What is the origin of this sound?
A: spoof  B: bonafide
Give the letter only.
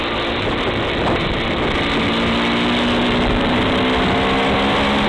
A